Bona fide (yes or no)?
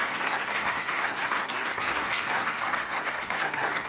no